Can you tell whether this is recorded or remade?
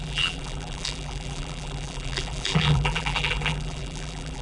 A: remade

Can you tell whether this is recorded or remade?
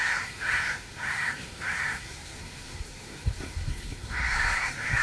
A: remade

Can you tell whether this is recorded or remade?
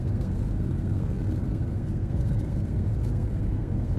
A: remade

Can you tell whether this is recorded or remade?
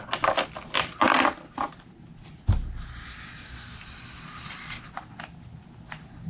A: recorded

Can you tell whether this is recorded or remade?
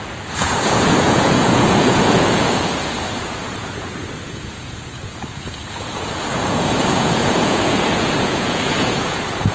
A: remade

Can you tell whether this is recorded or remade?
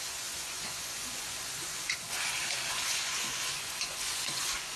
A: remade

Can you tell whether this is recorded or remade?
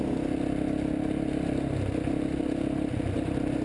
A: recorded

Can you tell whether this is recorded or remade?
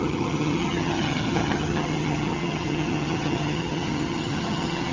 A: remade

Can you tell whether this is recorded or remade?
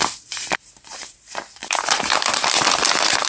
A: remade